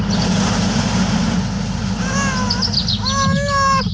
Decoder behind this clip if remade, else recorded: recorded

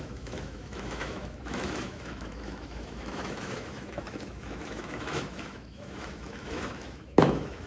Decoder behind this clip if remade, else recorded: remade, autoencoder, DAC-VAE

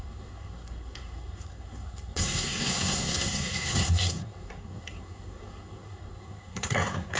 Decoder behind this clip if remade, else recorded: remade, codec, SNAC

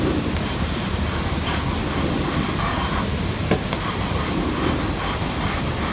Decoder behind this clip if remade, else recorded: recorded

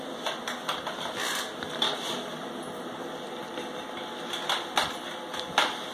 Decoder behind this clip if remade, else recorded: recorded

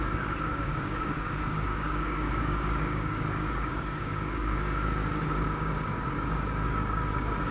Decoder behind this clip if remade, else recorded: remade, codec, DAC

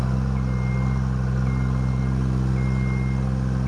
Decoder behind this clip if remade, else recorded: recorded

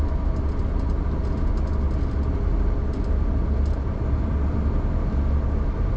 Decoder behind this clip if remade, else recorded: recorded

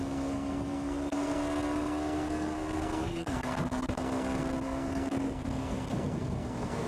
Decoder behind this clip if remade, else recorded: remade, codec, SNAC